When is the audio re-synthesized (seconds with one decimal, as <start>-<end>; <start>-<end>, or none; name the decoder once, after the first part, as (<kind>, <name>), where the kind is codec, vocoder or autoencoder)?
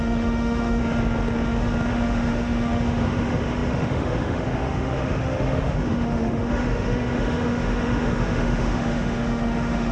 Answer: 0.0-0.8 (autoencoder, DAC-VAE); 1.9-9.9